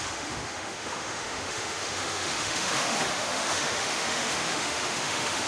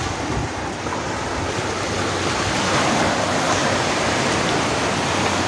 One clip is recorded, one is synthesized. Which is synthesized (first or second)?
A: first